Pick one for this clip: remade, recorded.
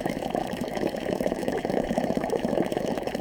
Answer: remade